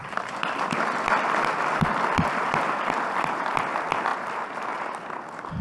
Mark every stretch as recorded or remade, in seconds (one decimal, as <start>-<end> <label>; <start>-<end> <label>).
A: 0.0-3.4 remade; 3.4-5.6 recorded